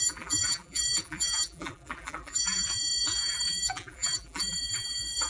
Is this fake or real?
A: fake